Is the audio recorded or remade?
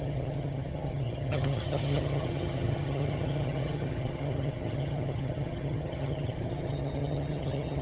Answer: remade